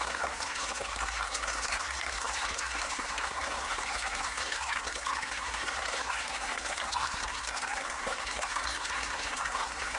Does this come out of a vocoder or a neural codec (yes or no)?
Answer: yes